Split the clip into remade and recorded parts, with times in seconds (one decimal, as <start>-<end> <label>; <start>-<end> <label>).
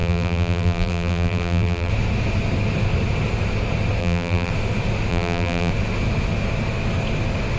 0.0-1.9 remade; 1.9-4.0 recorded; 4.0-4.5 remade; 4.5-5.1 recorded; 5.1-5.7 remade; 5.7-7.6 recorded